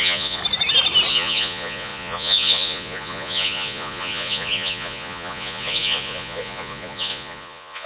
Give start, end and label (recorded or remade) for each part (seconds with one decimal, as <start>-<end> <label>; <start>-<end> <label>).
0.0-0.4 remade; 0.4-1.1 recorded; 1.1-7.9 remade